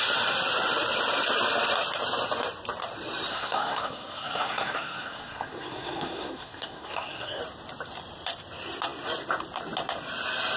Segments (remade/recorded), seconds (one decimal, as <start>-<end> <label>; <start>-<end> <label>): 0.0-3.3 recorded; 3.3-7.4 remade; 7.4-10.6 recorded